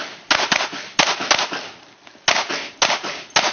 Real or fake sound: real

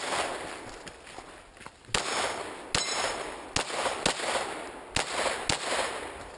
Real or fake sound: real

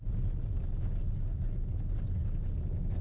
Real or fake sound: real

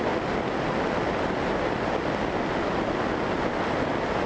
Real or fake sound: real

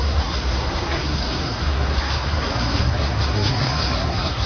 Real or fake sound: fake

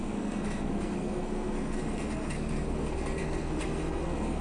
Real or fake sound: fake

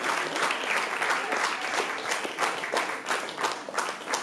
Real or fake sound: real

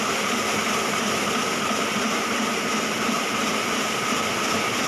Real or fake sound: real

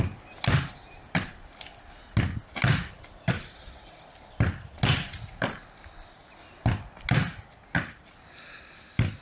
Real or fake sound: real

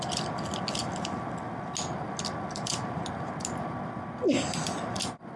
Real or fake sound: real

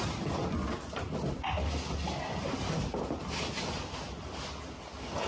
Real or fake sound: real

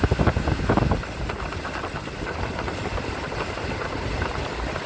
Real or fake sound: real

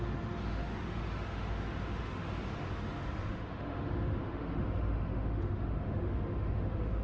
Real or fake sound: fake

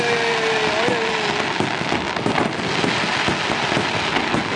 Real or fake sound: real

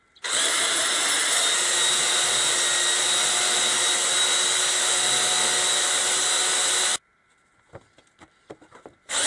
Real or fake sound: real